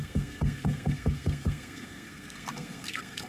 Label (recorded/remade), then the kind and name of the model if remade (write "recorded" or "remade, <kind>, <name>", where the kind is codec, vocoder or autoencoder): remade, codec, SNAC